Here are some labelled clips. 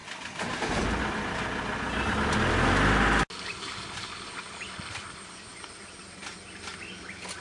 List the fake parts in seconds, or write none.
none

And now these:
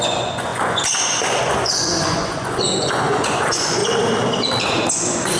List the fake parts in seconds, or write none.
0.0-3.8 (vocoder, Vocos); 4.9-5.4

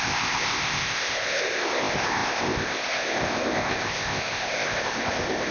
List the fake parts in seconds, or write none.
0.0-5.5 (codec, ZipCodec)

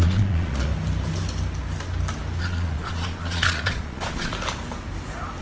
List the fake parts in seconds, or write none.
0.0-0.7 (vocoder, Vocos); 2.4-4.3

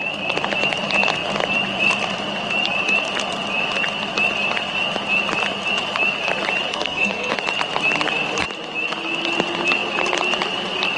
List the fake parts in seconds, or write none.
6.7-7.3 (codec, SNAC)

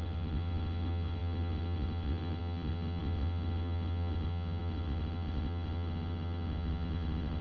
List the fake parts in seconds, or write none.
0.0-7.4 (vocoder, WaveNeXt)